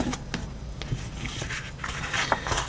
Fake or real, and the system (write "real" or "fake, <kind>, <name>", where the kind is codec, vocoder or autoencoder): real